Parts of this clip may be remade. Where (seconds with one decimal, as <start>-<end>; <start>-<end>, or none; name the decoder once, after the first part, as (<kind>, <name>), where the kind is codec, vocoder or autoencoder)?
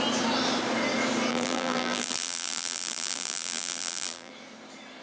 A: 1.3-4.3 (vocoder, BigVGAN v2)